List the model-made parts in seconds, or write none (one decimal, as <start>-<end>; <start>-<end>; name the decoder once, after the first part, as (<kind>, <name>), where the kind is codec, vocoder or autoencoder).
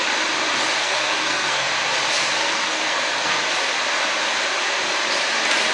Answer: 0.8-1.7 (codec, SNAC); 2.4-3.4